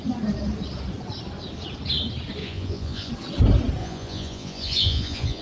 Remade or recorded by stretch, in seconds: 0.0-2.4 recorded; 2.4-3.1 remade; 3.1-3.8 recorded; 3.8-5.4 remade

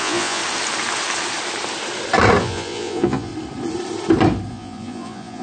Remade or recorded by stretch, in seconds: 0.0-0.4 remade; 0.4-2.4 recorded; 2.4-3.3 remade; 3.3-4.5 recorded; 4.5-5.4 remade

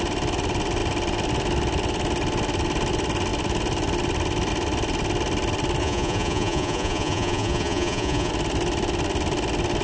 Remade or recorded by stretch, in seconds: 0.0-5.8 recorded; 5.8-8.3 remade; 8.3-9.8 recorded